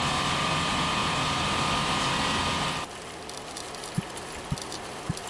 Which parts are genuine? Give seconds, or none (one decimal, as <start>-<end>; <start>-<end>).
0.0-5.3